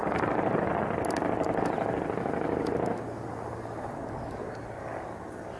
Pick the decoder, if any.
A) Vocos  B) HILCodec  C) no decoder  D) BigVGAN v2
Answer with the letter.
C